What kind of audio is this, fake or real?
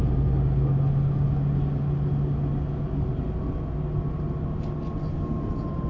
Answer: real